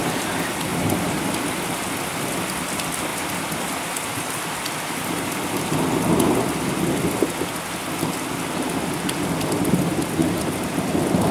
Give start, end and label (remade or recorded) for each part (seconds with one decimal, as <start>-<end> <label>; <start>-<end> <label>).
0.0-0.7 recorded; 0.7-1.3 remade; 1.3-11.3 recorded